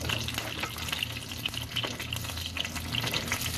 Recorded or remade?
recorded